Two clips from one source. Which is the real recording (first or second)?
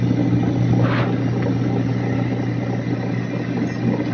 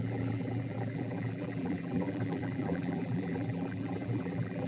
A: first